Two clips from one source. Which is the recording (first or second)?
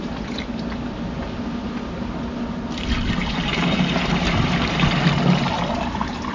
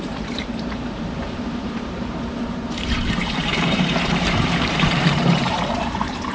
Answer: first